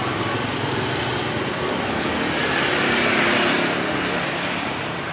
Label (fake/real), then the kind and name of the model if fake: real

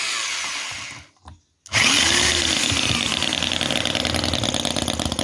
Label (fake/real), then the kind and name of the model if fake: real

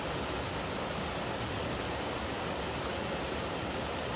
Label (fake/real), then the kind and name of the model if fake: real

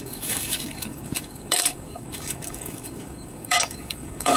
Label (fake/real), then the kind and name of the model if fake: fake, codec, DAC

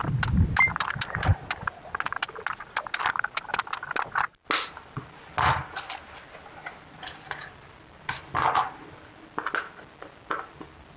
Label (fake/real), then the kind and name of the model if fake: real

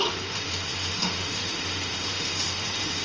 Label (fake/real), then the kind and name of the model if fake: fake, autoencoder, DAC-VAE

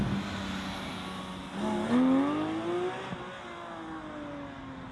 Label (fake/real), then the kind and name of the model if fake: real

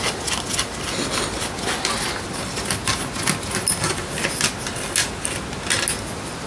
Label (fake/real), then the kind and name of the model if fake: real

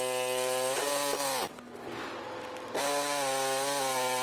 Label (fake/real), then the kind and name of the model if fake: real